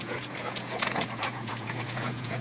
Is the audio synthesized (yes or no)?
yes